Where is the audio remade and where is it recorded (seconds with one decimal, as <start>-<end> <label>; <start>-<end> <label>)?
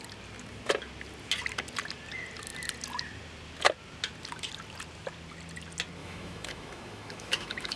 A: 0.0-6.0 recorded; 6.0-7.8 remade